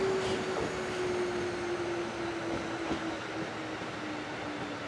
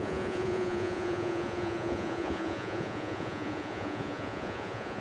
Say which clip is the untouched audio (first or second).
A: first